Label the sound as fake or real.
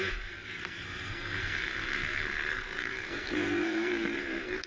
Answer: fake